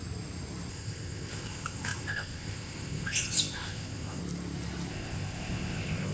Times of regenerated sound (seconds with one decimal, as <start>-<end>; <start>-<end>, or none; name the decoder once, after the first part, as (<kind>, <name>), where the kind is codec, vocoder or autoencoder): 0.7-4.2 (codec, ZipCodec); 4.9-6.1